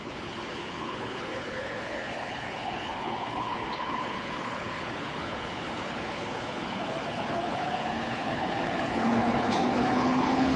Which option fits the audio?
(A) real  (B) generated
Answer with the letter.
B